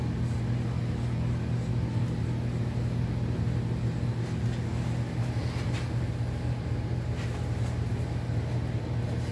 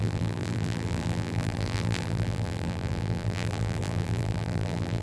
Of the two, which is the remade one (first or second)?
second